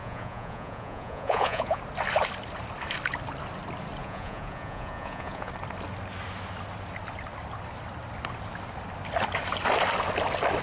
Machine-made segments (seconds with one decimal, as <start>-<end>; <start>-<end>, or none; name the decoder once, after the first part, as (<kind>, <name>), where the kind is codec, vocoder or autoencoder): 0.0-1.8 (vocoder, Vocos); 4.0-5.5